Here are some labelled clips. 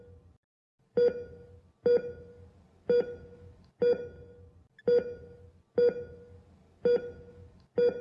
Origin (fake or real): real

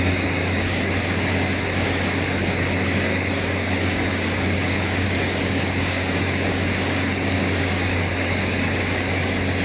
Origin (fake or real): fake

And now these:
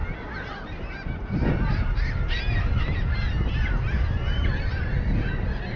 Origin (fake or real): real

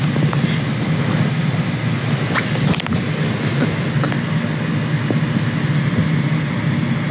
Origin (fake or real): real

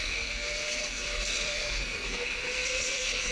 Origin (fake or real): fake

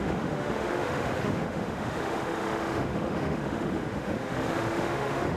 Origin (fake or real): fake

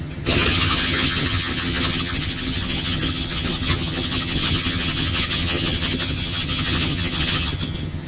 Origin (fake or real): fake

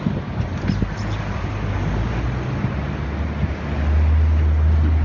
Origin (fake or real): real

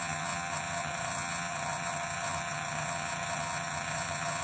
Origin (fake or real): fake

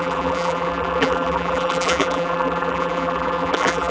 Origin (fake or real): fake